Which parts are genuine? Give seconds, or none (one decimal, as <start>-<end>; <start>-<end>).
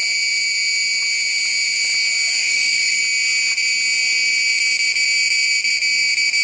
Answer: 0.0-2.4; 3.0-6.4